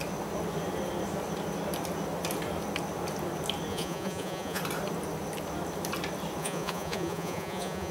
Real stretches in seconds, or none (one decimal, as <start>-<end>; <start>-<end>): 0.0-3.7; 4.6-6.4